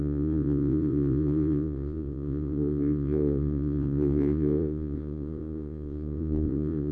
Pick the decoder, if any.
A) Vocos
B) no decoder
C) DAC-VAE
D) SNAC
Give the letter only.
A